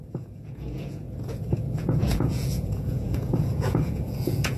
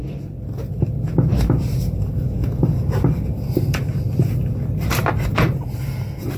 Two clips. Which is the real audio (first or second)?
second